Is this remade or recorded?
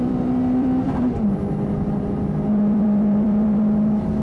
remade